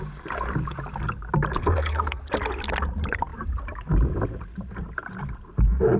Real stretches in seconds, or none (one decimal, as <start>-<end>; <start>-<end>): 0.0-1.6; 2.2-6.0